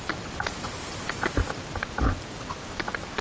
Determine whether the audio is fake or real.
real